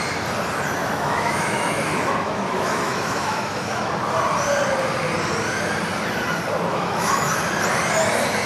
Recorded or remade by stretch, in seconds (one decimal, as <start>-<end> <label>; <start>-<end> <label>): 0.0-0.8 recorded; 0.8-3.9 remade; 3.9-6.7 recorded; 6.7-7.3 remade; 7.3-8.5 recorded